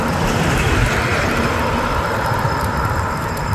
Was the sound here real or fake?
real